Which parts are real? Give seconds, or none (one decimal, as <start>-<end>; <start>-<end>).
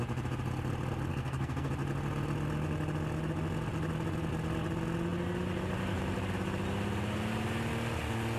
0.0-1.1; 1.7-8.4